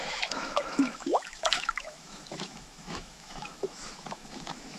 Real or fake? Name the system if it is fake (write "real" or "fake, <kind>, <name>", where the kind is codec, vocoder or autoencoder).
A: fake, autoencoder, DAC-VAE